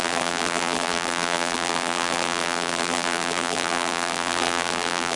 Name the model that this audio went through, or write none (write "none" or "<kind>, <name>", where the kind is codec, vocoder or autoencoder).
vocoder, BigVGAN v2